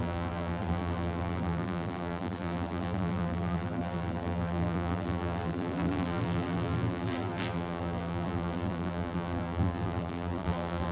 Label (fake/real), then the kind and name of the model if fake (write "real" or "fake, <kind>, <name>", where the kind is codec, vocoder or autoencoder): fake, vocoder, BigVGAN v2